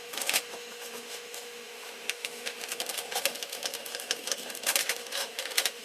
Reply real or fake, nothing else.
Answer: fake